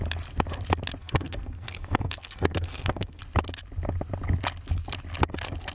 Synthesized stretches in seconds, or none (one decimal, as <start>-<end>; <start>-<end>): 1.0-3.2